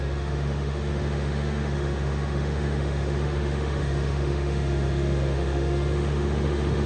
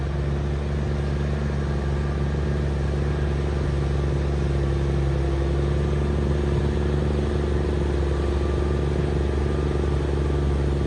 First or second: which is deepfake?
first